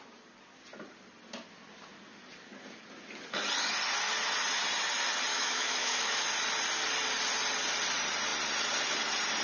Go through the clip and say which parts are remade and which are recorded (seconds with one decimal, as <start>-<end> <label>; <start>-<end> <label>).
0.0-5.3 recorded; 5.3-6.2 remade; 6.2-9.4 recorded